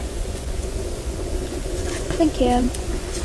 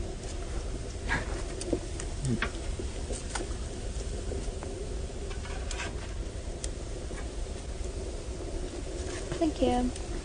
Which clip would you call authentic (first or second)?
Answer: second